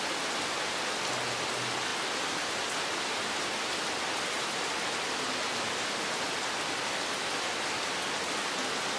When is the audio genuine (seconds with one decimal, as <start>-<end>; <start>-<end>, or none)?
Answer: 0.0-9.0